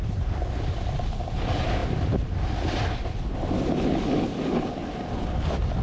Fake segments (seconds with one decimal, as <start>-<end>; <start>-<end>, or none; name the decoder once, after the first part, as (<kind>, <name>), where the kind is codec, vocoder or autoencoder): none